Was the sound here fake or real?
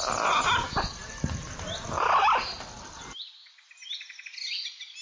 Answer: real